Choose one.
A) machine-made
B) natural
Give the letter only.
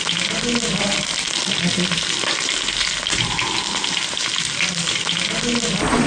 B